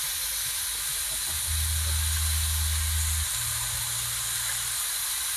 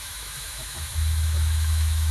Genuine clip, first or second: first